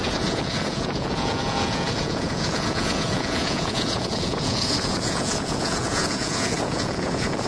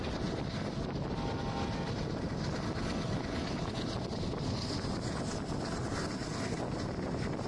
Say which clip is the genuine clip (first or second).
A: second